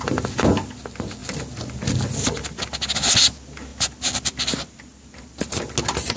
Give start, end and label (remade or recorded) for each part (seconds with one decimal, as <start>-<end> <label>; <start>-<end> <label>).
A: 0.0-6.2 recorded